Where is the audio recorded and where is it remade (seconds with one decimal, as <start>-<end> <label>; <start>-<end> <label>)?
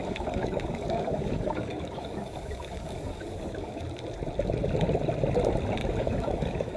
0.0-3.8 remade; 3.8-5.8 recorded; 5.8-6.8 remade